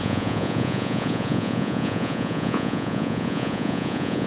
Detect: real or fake fake